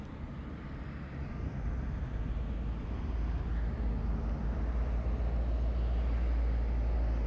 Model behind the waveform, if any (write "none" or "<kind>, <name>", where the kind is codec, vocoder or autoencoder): none